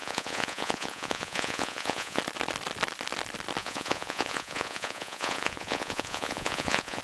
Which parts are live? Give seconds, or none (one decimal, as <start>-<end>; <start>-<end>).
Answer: 2.2-3.6